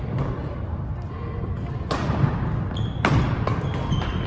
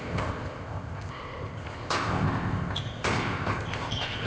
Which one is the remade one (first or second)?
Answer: second